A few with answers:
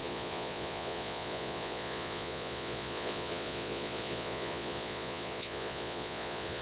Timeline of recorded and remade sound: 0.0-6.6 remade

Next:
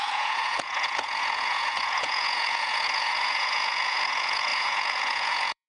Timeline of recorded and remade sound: 0.0-5.7 remade

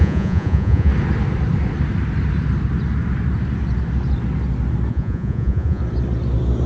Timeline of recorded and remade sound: 0.0-0.9 remade; 0.9-4.9 recorded; 4.9-5.8 remade; 5.8-6.7 recorded

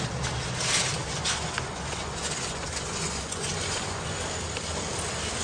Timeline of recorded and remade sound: 0.0-1.0 recorded; 1.0-4.2 remade; 4.2-5.4 recorded

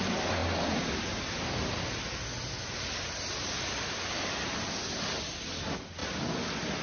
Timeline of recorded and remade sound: 0.0-6.8 recorded

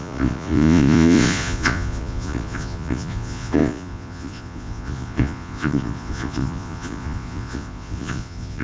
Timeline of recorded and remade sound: 0.0-8.6 remade

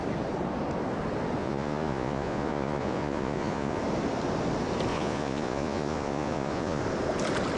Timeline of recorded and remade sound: 0.0-1.4 recorded; 1.4-3.8 remade; 3.8-4.9 recorded; 4.9-6.8 remade; 6.8-7.6 recorded

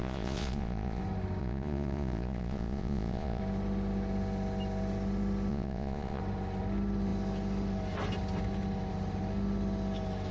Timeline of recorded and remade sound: 0.0-1.0 remade; 1.0-1.4 recorded; 1.4-3.4 remade; 3.4-5.5 recorded; 5.5-6.2 remade; 6.2-10.3 recorded